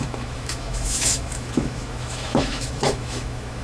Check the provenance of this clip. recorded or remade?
remade